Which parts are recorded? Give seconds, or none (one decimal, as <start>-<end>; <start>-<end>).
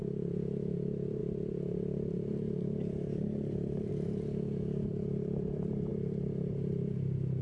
none